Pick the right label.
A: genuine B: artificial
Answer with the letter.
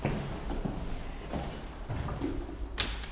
A